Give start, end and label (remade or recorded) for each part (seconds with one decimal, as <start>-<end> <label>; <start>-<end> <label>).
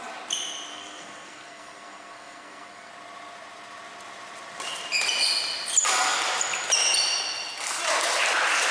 0.0-0.7 recorded; 0.7-2.9 remade; 2.9-8.7 recorded